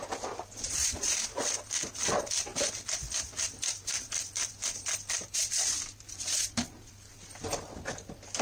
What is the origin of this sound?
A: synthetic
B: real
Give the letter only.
A